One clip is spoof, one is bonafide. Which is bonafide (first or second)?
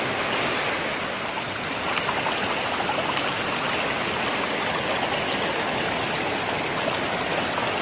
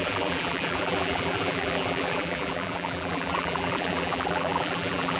first